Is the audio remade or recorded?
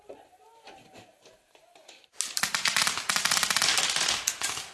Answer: recorded